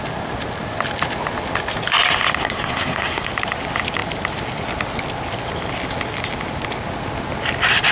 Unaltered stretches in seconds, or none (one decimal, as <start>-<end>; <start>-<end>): 0.0-2.4; 3.3-7.9